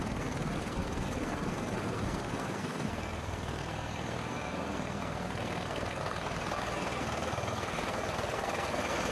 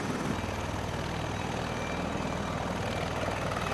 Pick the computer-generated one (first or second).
first